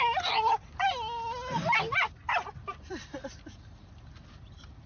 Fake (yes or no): no